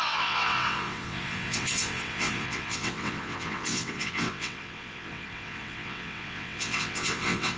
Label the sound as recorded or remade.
remade